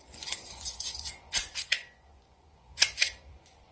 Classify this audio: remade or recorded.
remade